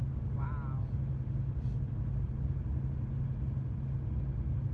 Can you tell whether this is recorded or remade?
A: recorded